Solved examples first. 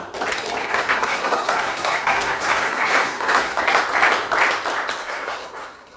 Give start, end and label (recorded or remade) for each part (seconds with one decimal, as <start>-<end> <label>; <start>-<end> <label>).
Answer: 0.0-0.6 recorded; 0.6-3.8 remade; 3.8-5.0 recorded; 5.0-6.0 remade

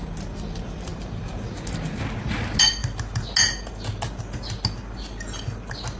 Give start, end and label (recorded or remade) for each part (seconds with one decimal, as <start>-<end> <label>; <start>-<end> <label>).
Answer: 0.0-6.0 recorded

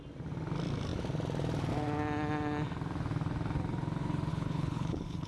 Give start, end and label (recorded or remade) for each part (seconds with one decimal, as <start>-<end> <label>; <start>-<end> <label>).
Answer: 0.0-4.3 recorded; 4.3-5.3 remade

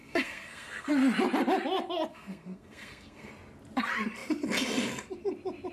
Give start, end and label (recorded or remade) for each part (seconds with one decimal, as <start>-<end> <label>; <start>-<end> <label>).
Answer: 0.0-0.9 remade; 0.9-2.1 recorded; 2.1-3.3 remade; 3.3-5.7 recorded

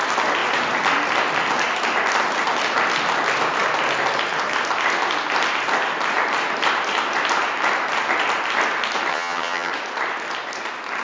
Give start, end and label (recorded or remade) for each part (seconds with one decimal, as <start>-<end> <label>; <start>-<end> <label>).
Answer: 0.0-9.1 recorded; 9.1-9.7 remade; 9.7-11.0 recorded

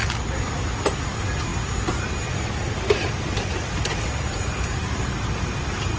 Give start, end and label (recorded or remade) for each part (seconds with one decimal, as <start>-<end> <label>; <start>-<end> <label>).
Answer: 0.0-6.0 recorded

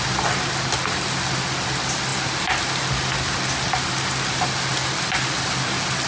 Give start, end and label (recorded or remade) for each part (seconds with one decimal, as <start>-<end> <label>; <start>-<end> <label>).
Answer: 0.0-6.1 recorded